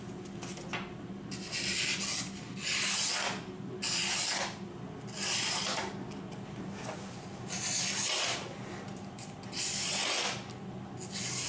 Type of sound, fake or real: real